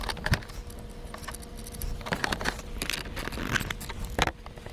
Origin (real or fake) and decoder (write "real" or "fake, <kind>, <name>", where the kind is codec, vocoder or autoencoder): real